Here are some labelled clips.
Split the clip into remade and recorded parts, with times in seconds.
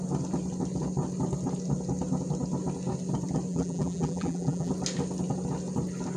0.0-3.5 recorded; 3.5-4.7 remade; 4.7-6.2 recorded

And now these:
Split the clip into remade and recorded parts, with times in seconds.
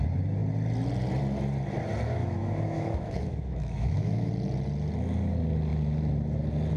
0.0-2.2 recorded; 2.2-4.3 remade; 4.3-6.8 recorded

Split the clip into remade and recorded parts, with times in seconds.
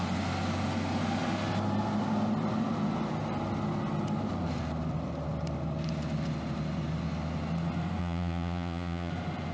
0.0-8.0 recorded; 8.0-9.1 remade; 9.1-9.5 recorded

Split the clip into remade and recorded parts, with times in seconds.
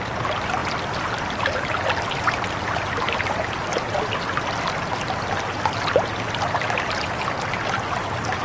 0.0-8.4 recorded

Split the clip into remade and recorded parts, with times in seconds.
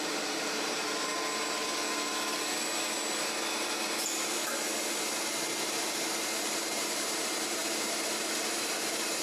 0.0-1.1 remade; 1.1-5.8 recorded; 5.8-9.2 remade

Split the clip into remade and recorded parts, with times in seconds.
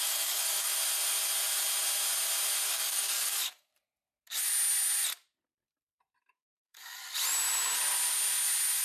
0.0-0.7 remade; 0.7-2.7 recorded; 2.7-3.7 remade; 3.7-6.2 recorded; 6.2-7.0 remade; 7.0-8.8 recorded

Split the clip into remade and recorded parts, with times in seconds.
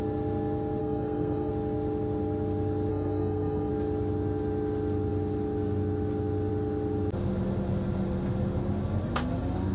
0.0-0.8 recorded; 0.8-1.5 remade; 1.5-2.9 recorded; 2.9-3.7 remade; 3.7-9.7 recorded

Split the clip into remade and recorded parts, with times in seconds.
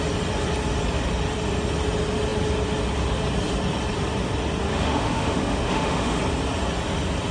0.0-4.7 recorded; 4.7-6.2 remade; 6.2-7.3 recorded